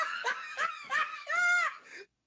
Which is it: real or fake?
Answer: fake